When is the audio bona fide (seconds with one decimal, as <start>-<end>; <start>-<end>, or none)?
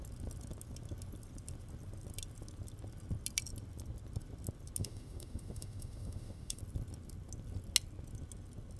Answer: 0.0-4.8; 6.6-8.8